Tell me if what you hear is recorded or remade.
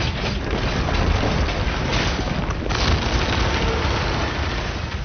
recorded